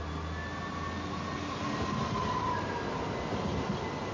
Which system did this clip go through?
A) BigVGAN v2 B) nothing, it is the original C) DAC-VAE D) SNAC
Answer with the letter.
B